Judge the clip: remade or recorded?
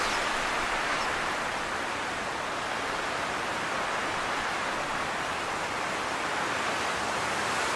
remade